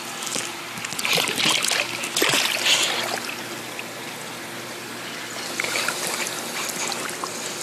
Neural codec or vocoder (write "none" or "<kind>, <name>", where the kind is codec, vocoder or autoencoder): none